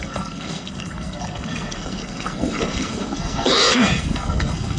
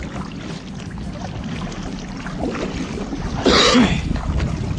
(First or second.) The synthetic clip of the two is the first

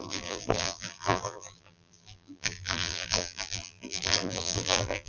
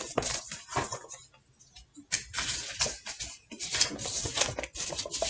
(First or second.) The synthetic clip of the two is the first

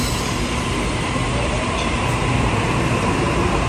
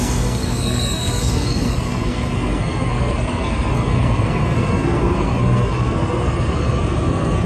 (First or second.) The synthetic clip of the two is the second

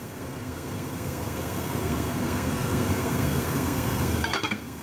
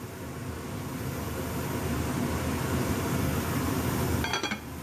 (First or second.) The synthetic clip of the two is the first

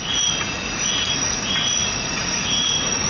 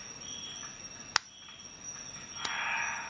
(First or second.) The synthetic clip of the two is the first